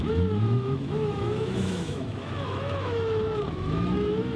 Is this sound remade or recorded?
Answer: remade